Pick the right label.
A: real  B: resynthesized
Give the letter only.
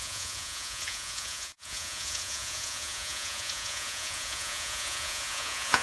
B